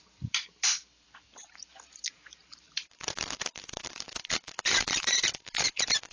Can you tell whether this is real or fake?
fake